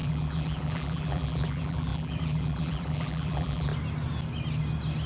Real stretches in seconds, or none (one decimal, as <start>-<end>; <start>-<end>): 3.7-5.1